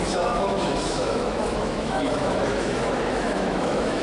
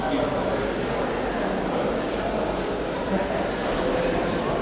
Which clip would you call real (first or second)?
second